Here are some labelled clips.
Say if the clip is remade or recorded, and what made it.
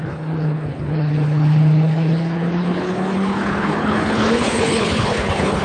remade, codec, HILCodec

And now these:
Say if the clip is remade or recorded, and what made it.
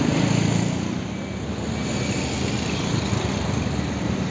recorded